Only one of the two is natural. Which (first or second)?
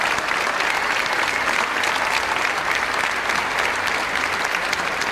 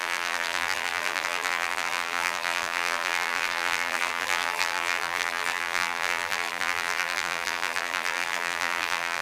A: first